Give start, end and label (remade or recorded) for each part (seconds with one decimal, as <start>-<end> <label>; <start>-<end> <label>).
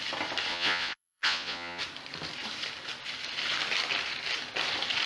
0.0-0.5 recorded; 0.5-1.8 remade; 1.8-5.1 recorded